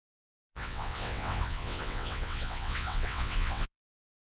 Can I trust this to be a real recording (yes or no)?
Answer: no